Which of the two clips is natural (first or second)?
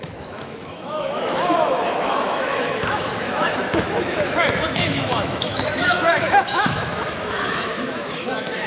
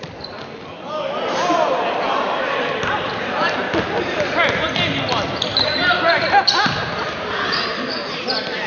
second